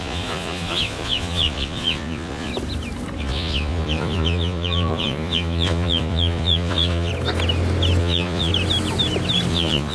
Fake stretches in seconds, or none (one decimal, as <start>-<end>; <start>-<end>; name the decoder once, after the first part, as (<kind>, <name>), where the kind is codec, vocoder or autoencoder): 0.0-2.5 (vocoder, Vocos); 3.2-7.1; 8.0-8.5; 9.5-9.9